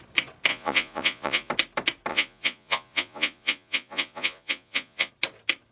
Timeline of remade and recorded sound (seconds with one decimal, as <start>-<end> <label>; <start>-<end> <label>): 0.0-0.5 recorded; 0.5-1.5 remade; 1.5-2.1 recorded; 2.1-5.1 remade; 5.1-5.7 recorded